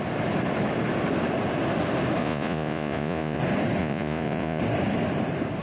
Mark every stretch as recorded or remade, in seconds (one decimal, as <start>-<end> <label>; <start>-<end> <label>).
0.0-2.2 recorded; 2.2-3.4 remade; 3.4-3.8 recorded; 3.8-4.6 remade; 4.6-5.6 recorded